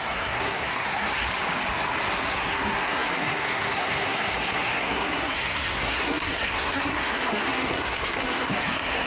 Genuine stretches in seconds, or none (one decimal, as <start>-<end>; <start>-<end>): 1.2-2.3